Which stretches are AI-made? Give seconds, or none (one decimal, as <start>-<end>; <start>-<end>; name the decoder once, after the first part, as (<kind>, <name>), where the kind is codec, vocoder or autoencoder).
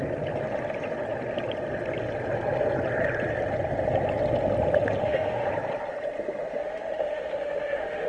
5.0-5.5 (autoencoder, DAC-VAE); 6.6-8.1